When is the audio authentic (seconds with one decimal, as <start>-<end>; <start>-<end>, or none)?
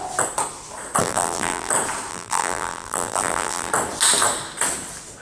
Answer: 0.0-1.0; 1.7-2.1; 3.7-5.2